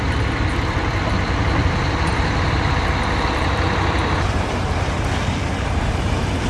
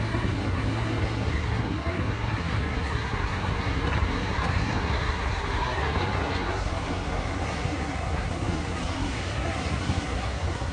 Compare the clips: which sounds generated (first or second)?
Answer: second